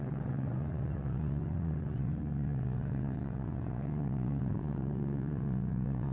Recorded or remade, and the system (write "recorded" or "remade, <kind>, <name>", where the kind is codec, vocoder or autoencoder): remade, vocoder, WaveNeXt